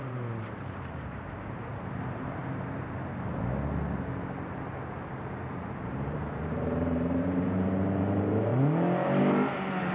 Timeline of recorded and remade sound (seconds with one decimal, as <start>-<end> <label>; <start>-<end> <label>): 0.0-2.4 remade; 2.4-5.9 recorded; 5.9-8.5 remade; 8.5-9.2 recorded; 9.2-9.9 remade